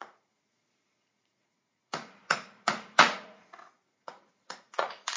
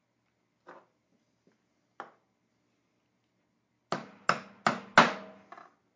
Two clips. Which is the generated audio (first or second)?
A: first